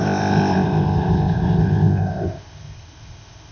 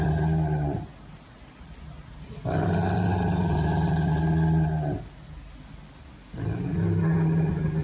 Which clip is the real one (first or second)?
second